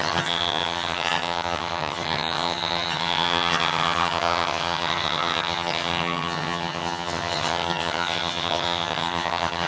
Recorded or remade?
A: remade